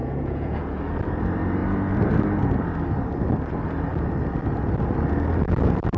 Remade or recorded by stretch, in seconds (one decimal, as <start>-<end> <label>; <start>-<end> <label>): 0.0-0.8 remade; 0.8-6.0 recorded